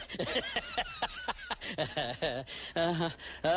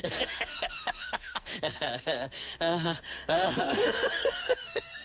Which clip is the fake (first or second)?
second